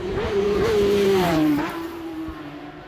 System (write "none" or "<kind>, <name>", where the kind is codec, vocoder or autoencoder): vocoder, BigVGAN v2